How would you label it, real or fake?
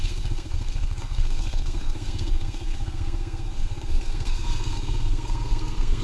fake